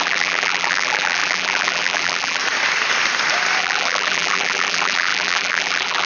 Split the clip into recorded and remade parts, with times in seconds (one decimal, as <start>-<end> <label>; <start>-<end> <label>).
0.0-2.4 remade; 2.4-3.6 recorded; 3.6-6.1 remade